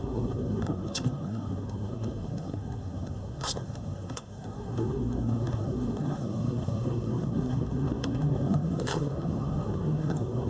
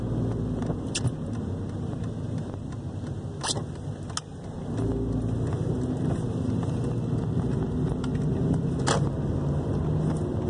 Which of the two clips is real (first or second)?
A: second